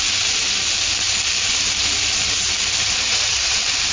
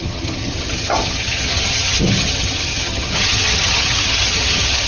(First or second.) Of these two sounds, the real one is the first